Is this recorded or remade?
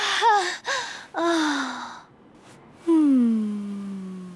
recorded